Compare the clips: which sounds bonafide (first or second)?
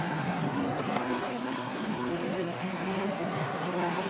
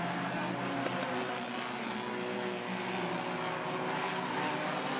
second